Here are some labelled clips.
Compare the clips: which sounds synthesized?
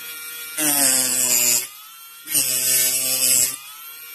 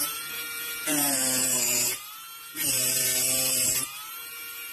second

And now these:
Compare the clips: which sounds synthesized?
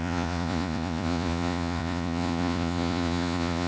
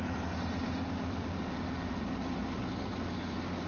first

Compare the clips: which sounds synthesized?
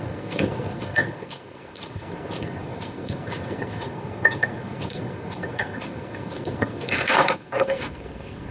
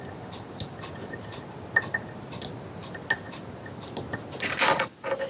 first